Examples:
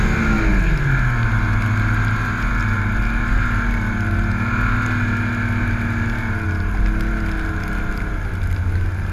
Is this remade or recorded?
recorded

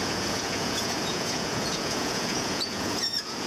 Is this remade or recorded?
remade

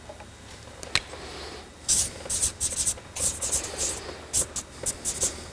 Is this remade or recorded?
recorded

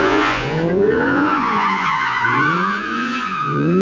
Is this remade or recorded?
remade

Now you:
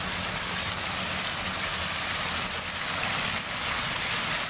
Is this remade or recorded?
recorded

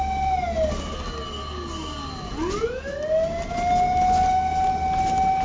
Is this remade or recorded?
recorded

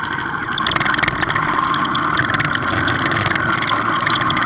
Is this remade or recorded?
recorded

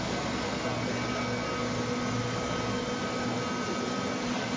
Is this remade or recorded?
recorded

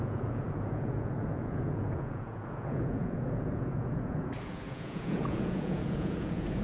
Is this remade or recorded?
remade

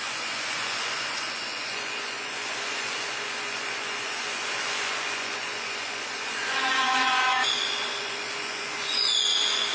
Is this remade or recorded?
remade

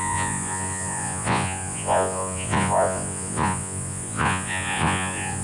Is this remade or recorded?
remade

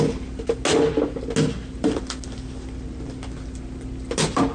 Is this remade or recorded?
recorded